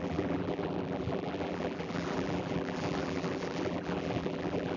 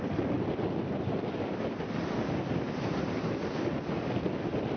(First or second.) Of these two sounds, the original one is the second